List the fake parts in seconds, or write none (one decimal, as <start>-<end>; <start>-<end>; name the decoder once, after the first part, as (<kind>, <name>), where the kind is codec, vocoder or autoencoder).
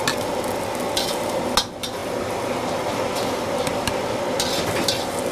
none